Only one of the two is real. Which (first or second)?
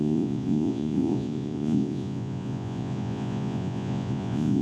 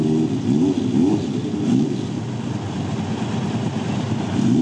second